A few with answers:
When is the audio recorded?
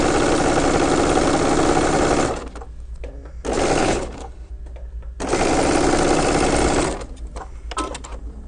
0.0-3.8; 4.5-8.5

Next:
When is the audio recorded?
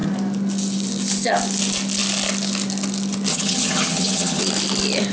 0.0-3.3; 4.4-5.1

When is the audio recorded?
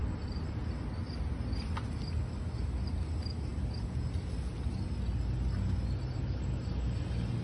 0.0-7.4